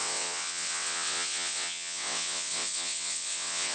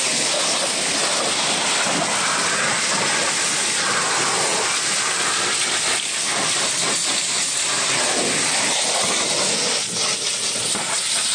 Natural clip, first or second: second